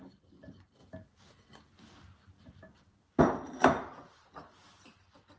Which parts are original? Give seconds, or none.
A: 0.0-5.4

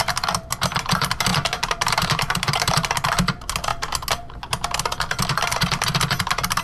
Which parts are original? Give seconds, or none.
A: 0.0-1.3; 2.9-6.6

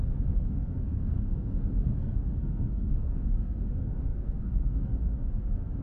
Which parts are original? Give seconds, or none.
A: none

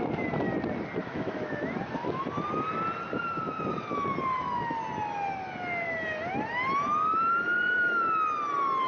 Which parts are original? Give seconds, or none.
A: 0.0-1.0; 2.2-8.9

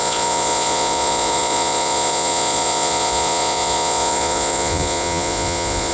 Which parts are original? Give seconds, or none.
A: none